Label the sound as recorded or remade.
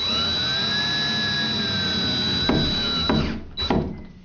recorded